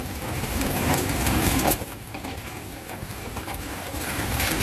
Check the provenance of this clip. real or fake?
fake